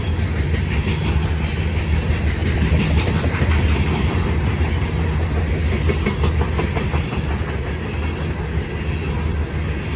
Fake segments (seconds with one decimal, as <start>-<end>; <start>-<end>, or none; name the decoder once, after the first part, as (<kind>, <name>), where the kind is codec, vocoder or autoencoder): 2.4-4.7 (vocoder, BigVGAN v2)